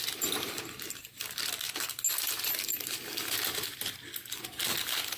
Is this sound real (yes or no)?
yes